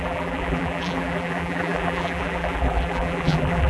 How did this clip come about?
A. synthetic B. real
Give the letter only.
A